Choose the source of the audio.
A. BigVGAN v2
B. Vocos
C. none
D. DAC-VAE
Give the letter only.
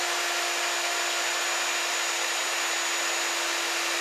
C